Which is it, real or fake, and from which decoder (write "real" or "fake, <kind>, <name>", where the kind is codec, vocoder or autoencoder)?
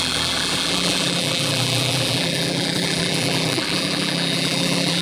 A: fake, vocoder, BigVGAN v2